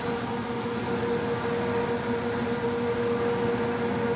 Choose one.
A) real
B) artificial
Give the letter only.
A